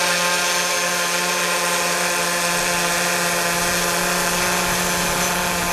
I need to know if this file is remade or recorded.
recorded